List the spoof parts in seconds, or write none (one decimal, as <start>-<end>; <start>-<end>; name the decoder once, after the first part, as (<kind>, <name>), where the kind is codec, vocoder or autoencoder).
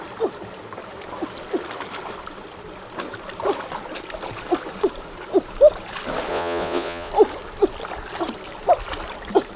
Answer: 6.3-7.1 (vocoder, Vocos)